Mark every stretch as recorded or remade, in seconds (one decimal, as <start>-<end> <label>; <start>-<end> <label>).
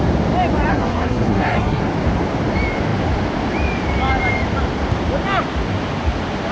0.0-0.7 recorded; 0.7-1.8 remade; 1.8-6.5 recorded